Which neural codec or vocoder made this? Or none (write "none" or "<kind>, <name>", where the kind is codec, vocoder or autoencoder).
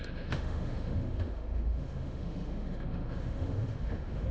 autoencoder, DAC-VAE